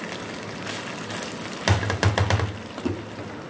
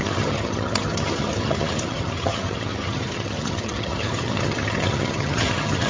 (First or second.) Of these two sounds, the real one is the first